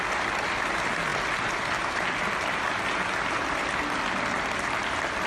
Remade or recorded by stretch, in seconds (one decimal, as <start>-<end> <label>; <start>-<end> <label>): 0.0-5.3 recorded

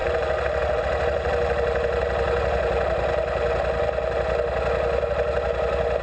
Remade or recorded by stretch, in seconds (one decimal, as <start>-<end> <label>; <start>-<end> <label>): 0.0-0.8 remade; 0.8-6.0 recorded

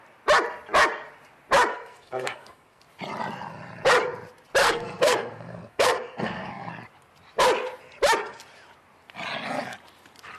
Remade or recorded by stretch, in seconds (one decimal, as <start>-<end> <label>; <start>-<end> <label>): 0.0-1.7 recorded; 1.7-2.8 remade; 2.8-4.6 recorded; 4.6-6.7 remade; 6.7-10.4 recorded